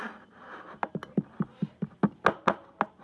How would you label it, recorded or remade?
recorded